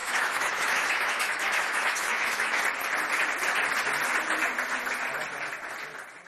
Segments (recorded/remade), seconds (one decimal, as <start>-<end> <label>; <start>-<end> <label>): 0.0-2.6 remade; 2.6-6.3 recorded